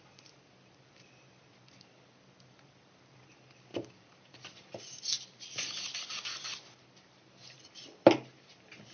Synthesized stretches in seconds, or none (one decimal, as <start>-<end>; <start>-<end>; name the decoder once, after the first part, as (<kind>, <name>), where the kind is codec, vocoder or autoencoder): none